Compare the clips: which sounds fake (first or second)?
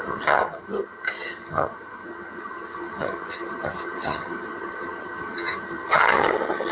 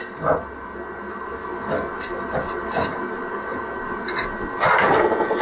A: first